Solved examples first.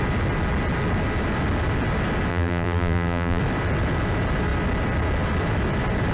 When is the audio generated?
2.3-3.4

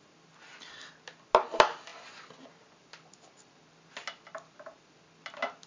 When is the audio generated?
none

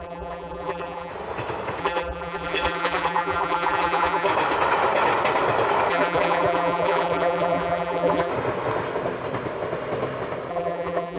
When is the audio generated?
0.0-1.1; 1.8-4.3; 5.9-8.3; 10.5-11.2

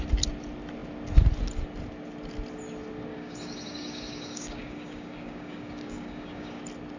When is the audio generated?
3.1-6.6

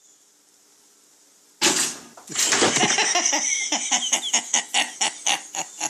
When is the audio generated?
none

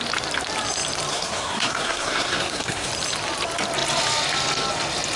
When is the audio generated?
1.1-2.9

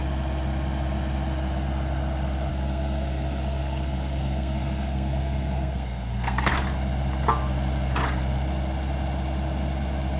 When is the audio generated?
2.5-6.5